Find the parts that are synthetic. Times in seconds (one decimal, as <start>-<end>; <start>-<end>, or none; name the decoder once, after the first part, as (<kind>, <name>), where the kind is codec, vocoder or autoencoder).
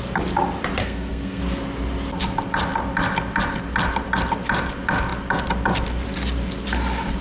0.8-1.4 (codec, SNAC)